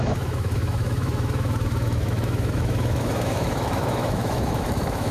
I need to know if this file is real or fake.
fake